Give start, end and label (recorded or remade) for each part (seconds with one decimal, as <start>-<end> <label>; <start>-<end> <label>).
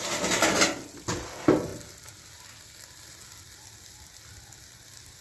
0.0-5.2 recorded